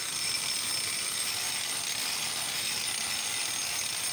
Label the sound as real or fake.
real